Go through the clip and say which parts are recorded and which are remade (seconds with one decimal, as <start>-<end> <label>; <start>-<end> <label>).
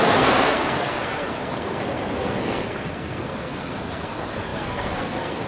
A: 0.0-5.5 remade